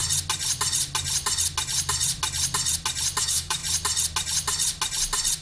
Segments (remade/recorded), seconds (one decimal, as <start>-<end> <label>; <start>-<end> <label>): 0.0-3.2 recorded; 3.2-3.6 remade; 3.6-5.4 recorded